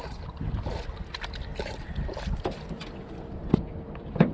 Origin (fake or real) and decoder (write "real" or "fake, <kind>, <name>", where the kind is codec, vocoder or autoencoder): real